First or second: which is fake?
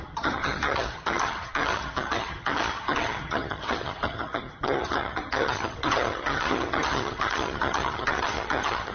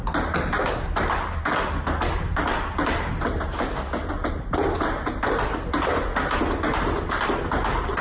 first